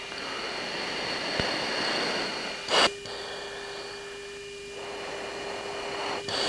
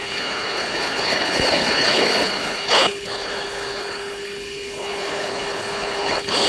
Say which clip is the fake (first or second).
second